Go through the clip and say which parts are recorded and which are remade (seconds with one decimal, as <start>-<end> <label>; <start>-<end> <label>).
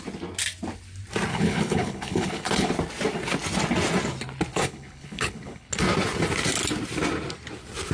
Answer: 0.0-1.3 recorded; 1.3-2.7 remade; 2.7-4.5 recorded; 4.5-5.7 remade; 5.7-7.9 recorded